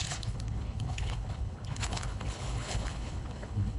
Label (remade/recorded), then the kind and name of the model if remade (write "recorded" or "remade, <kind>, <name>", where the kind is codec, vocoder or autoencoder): remade, codec, HILCodec